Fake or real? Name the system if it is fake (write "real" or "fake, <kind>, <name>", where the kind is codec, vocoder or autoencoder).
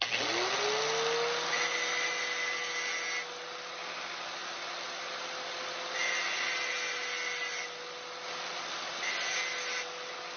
real